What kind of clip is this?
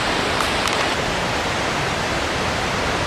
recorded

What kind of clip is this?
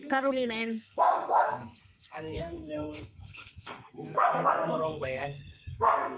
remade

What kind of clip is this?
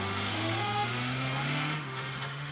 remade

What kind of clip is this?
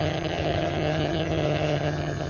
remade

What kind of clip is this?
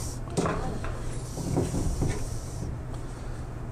remade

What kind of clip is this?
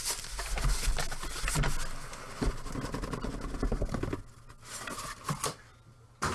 recorded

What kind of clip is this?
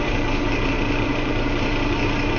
remade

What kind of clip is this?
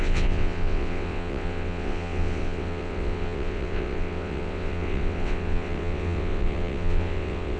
remade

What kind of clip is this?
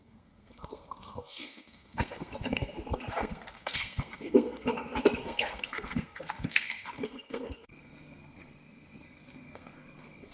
remade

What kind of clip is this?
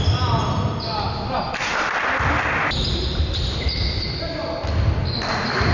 recorded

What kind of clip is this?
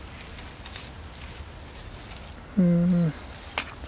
recorded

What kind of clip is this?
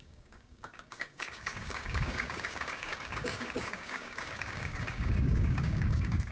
remade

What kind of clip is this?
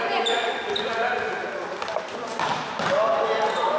recorded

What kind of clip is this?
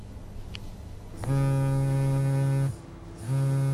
recorded